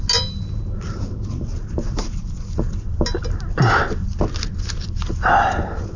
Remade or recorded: recorded